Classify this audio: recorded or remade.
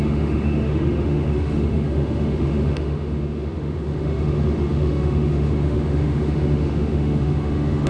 remade